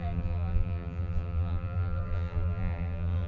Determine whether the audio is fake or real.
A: fake